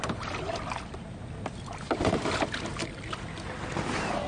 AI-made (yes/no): no